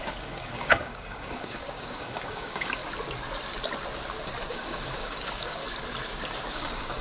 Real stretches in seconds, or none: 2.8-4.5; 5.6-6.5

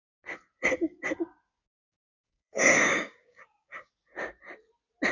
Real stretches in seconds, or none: 0.0-1.7; 3.9-5.1